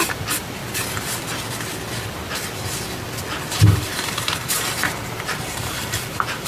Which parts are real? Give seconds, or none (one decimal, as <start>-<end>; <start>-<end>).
0.6-3.6